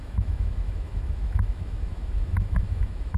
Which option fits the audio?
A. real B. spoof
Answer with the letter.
B